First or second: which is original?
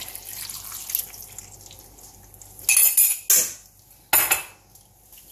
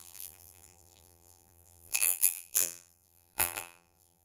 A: first